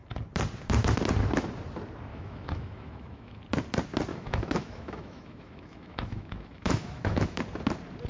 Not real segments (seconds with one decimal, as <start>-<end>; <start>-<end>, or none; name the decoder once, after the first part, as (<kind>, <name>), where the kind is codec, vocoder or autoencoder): 2.1-3.4 (autoencoder, DAC-VAE); 4.1-7.4